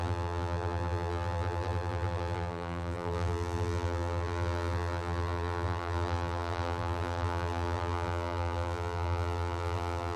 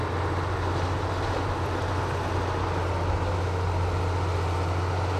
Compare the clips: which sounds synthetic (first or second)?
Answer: first